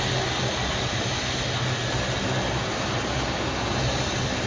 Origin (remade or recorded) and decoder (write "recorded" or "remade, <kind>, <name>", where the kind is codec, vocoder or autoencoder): recorded